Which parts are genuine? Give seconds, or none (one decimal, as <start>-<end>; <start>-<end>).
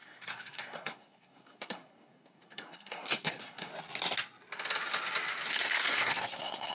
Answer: 3.7-5.5